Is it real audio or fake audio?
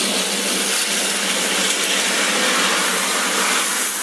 real